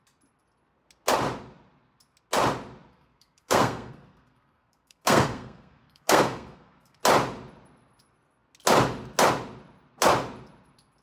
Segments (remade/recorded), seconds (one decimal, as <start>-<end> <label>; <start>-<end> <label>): 0.0-2.9 recorded; 2.9-7.0 remade; 7.0-11.0 recorded

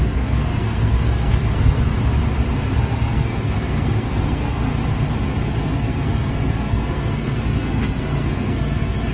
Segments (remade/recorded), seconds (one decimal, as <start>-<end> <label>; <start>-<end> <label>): 0.0-1.9 remade; 1.9-2.8 recorded; 2.8-4.7 remade; 4.7-5.6 recorded; 5.6-9.1 remade

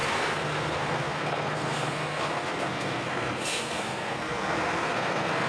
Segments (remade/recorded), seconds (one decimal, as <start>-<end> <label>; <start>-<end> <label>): 0.0-5.5 remade

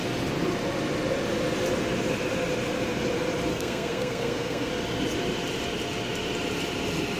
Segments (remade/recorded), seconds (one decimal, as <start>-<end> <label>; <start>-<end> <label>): 0.0-3.5 recorded; 3.5-4.7 remade; 4.7-7.2 recorded

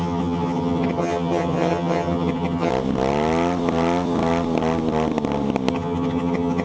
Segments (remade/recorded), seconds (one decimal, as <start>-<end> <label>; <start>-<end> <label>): 0.0-2.7 remade; 2.7-5.7 recorded; 5.7-6.6 remade

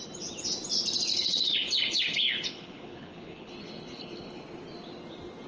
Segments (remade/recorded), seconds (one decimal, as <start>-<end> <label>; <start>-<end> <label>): 0.0-1.1 recorded; 1.1-4.4 remade; 4.4-5.5 recorded